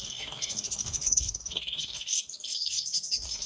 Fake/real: fake